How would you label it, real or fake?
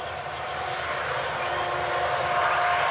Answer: real